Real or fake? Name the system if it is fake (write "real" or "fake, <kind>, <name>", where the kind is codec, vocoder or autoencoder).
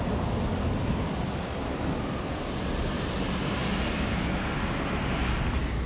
real